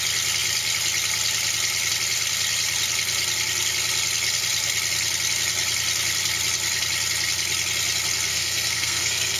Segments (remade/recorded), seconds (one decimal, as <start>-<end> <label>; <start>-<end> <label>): 0.0-8.3 recorded; 8.3-9.4 remade